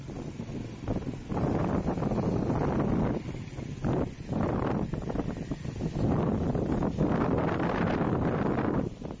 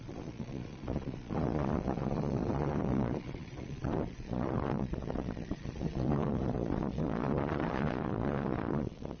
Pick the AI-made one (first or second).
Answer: second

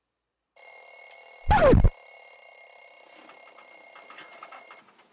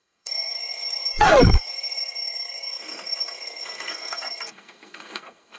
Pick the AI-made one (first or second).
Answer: second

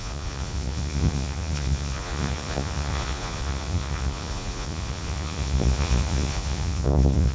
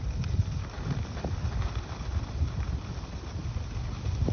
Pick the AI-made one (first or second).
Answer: first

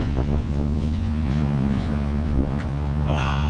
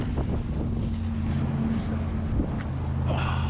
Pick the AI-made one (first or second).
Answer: first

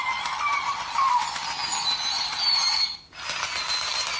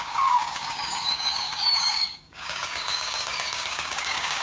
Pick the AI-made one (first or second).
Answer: second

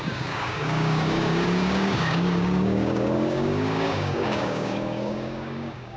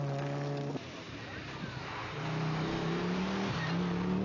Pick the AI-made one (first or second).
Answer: first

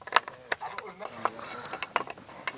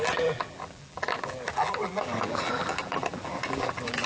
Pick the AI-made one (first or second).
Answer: second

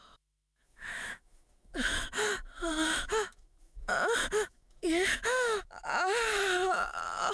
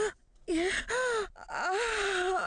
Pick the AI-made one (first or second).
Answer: first